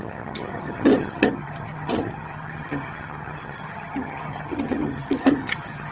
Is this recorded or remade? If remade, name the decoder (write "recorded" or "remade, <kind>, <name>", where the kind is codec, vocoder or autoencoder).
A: remade, vocoder, HiFi-GAN